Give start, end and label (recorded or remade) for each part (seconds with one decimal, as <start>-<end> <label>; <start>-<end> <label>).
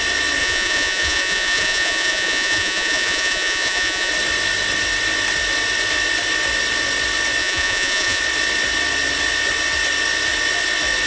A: 0.0-0.4 recorded; 0.4-4.1 remade; 4.1-7.4 recorded; 7.4-8.2 remade; 8.2-11.1 recorded